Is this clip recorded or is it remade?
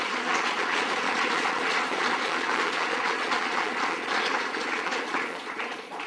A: remade